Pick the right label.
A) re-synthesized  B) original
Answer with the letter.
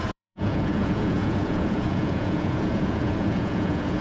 A